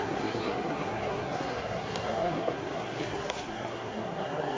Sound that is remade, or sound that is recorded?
remade